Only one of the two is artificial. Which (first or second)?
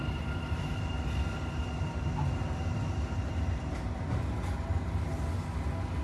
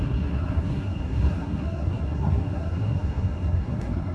second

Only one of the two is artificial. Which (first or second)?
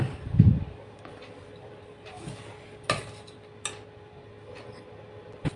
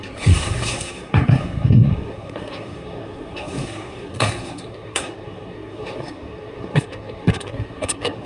second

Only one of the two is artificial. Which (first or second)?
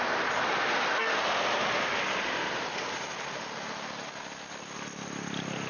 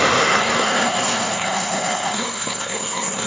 second